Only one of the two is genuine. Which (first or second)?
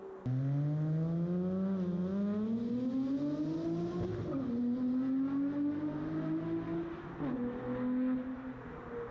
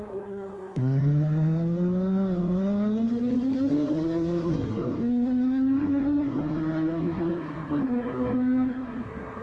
first